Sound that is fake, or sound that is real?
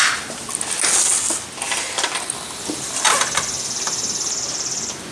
real